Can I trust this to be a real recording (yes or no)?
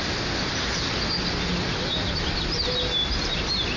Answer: yes